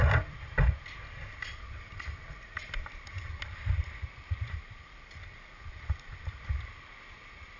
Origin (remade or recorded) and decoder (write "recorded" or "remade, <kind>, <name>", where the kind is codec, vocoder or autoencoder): remade, vocoder, BigVGAN v2